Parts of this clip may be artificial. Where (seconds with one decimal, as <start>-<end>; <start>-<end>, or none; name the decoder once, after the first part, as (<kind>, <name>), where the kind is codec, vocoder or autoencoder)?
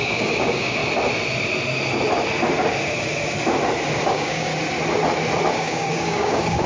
0.0-0.8 (codec, DAC); 4.1-4.5; 5.5-6.7